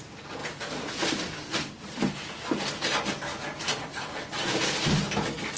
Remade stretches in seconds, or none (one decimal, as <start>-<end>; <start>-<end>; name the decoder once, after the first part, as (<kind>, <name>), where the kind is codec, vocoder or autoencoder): none